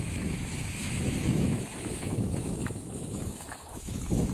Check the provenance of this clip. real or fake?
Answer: fake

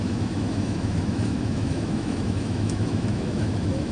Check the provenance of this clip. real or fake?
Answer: fake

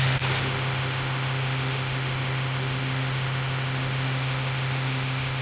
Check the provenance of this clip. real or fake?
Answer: fake